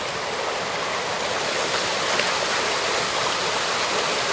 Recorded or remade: remade